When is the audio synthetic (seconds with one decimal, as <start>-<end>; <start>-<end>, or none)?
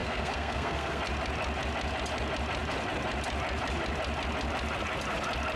0.0-1.0